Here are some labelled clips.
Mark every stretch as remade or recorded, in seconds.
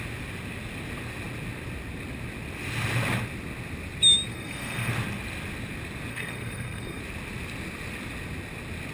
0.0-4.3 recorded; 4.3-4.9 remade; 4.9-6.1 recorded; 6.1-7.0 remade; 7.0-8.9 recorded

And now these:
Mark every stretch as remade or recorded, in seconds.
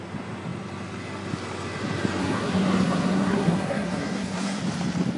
0.0-2.2 recorded; 2.2-4.6 remade; 4.6-5.2 recorded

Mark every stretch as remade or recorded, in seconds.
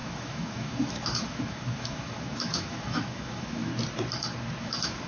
0.0-3.7 remade; 3.7-4.6 recorded; 4.6-5.1 remade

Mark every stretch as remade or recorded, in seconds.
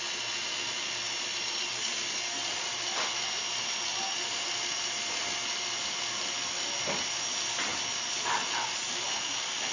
0.0-9.7 recorded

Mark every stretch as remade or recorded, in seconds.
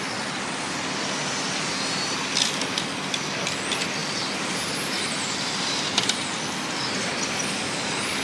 0.0-8.2 recorded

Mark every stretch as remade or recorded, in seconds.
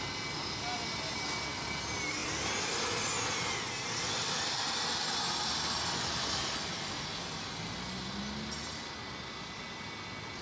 0.0-10.4 recorded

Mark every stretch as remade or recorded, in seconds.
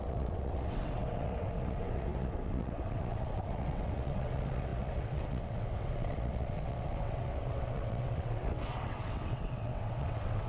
0.0-10.5 remade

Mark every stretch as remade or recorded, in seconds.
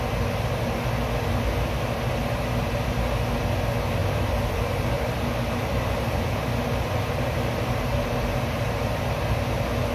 0.0-4.0 recorded; 4.0-9.0 remade; 9.0-9.9 recorded